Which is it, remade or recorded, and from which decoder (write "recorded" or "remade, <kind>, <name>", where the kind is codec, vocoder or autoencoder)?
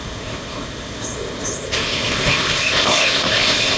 remade, codec, ZipCodec